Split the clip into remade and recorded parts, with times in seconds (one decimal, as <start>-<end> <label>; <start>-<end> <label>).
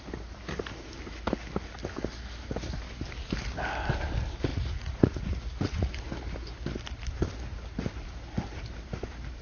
0.0-4.5 recorded; 4.5-6.1 remade; 6.1-9.4 recorded